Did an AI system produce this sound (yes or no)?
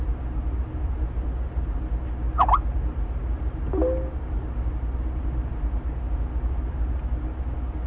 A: no